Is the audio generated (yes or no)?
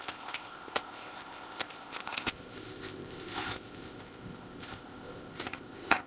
yes